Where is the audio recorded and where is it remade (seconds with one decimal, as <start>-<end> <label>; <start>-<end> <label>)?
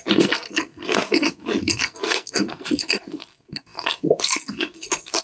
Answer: 0.0-5.2 remade